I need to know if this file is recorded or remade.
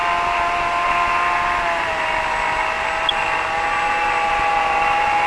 recorded